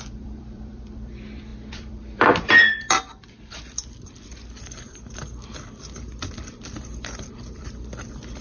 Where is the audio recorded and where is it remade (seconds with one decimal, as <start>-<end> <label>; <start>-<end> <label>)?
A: 0.0-8.4 remade